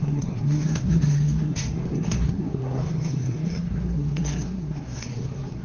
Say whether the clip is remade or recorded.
remade